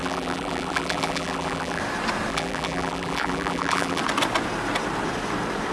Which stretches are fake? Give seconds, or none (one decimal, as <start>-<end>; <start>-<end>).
0.0-1.8; 2.3-4.0